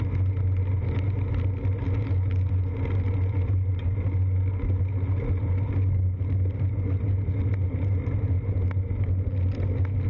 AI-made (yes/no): no